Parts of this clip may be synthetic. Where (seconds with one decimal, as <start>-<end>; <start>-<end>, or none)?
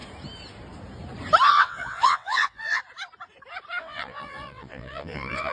1.5-2.8; 3.8-5.5